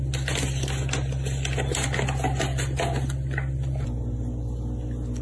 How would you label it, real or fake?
real